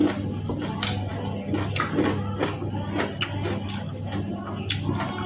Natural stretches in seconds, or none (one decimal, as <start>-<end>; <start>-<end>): 0.0-5.3